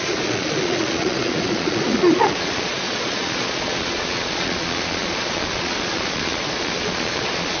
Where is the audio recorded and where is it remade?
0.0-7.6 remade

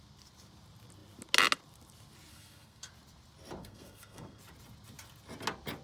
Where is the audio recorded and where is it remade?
0.0-2.3 recorded; 2.3-2.9 remade; 2.9-3.6 recorded; 3.6-4.4 remade; 4.4-5.8 recorded

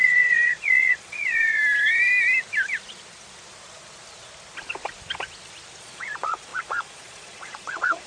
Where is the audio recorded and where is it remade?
0.0-1.6 remade; 1.6-5.8 recorded; 5.8-8.1 remade